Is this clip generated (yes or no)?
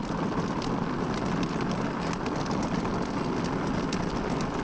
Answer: no